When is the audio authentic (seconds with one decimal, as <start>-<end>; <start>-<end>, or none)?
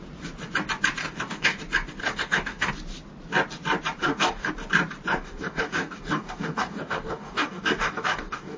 0.0-1.0; 1.6-2.0; 2.7-4.0; 4.5-5.1